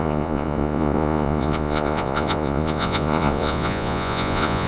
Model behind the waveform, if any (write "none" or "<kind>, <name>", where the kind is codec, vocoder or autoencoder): vocoder, Vocos